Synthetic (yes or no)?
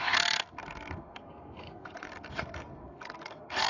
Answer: yes